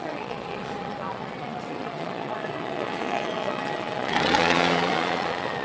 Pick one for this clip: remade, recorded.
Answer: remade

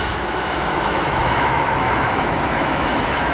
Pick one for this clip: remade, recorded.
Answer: remade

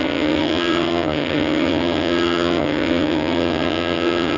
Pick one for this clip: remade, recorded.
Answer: remade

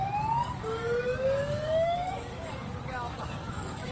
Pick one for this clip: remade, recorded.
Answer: remade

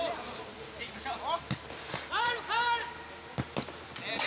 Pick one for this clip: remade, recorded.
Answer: recorded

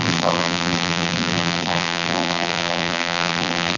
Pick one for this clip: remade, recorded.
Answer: remade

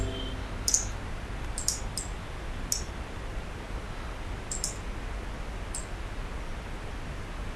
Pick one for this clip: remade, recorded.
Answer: recorded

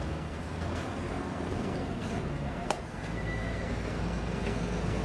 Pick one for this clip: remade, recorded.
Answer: remade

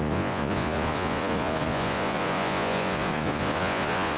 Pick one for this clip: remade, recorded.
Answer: remade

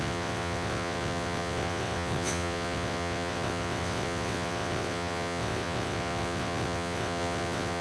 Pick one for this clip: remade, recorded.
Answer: remade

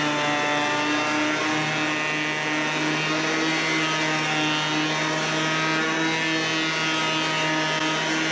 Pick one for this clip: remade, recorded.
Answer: recorded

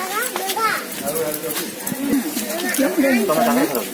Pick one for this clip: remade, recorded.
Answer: recorded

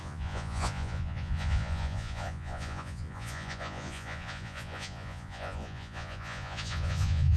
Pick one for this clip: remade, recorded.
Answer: remade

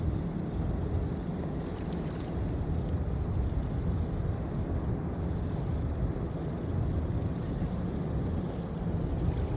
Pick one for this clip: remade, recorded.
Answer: recorded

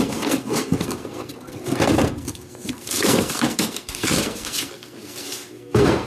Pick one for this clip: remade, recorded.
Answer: remade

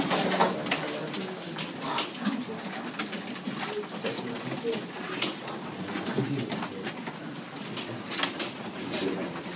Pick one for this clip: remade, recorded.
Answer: recorded